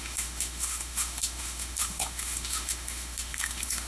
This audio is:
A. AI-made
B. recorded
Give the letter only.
A